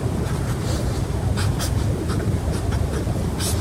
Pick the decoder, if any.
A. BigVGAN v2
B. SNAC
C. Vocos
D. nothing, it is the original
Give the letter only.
D